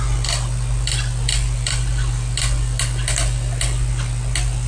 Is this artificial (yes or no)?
no